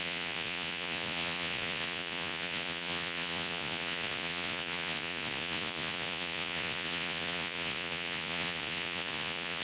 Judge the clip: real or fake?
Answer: fake